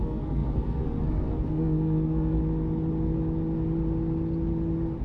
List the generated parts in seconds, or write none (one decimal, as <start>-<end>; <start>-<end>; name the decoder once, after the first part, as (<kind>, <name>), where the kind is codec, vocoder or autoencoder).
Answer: 0.0-2.4 (codec, SNAC)